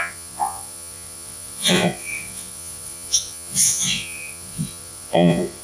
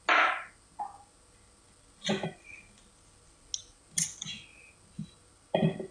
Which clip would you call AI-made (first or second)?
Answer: first